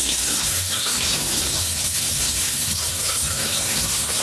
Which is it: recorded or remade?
remade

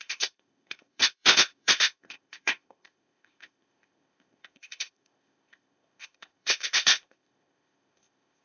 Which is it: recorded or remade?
remade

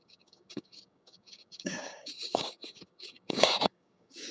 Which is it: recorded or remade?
remade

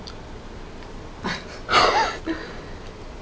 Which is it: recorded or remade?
recorded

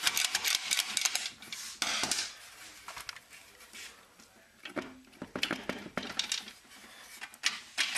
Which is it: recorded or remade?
recorded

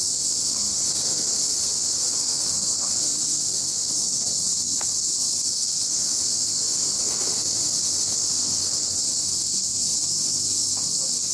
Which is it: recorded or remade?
remade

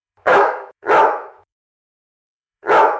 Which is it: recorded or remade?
remade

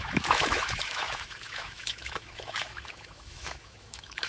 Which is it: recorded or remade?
remade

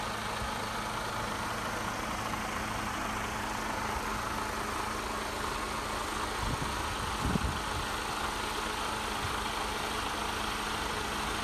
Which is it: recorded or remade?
recorded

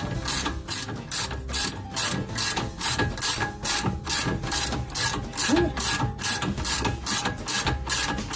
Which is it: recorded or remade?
recorded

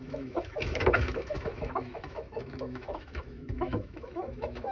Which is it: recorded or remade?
remade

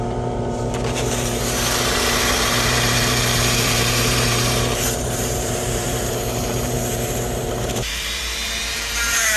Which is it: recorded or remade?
remade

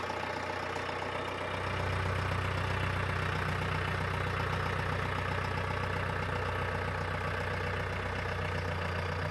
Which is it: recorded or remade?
recorded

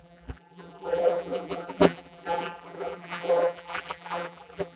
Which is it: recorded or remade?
remade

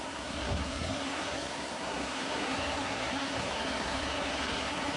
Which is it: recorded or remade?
remade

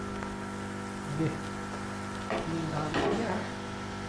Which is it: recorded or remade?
recorded